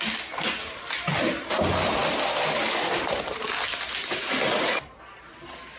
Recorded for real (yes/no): yes